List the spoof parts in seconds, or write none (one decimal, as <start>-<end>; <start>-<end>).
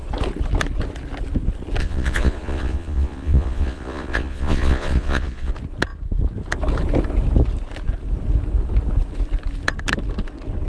1.8-5.5